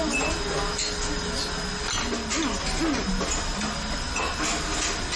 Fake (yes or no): no